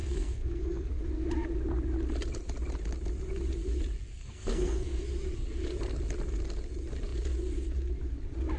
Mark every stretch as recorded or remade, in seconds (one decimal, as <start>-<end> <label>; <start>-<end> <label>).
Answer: 0.0-0.9 remade; 0.9-4.1 recorded; 4.1-5.0 remade; 5.0-8.6 recorded